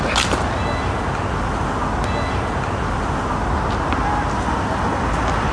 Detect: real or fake real